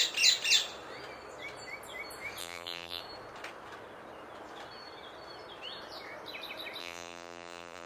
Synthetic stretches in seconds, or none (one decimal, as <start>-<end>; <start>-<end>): 2.4-3.0; 6.8-7.9